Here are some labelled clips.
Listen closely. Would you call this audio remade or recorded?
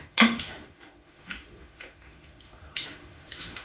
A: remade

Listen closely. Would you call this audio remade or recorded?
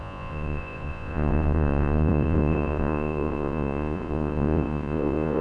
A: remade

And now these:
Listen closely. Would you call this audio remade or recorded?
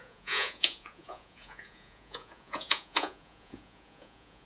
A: remade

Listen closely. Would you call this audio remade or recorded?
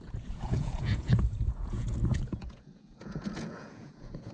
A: remade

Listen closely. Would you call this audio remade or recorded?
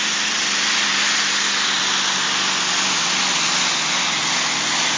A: recorded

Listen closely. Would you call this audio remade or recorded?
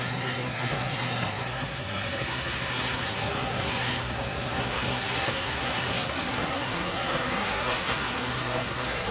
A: remade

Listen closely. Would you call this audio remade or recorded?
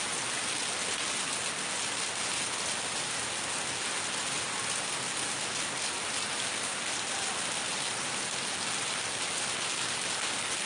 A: recorded